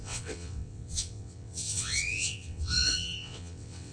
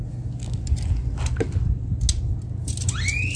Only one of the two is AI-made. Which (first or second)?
first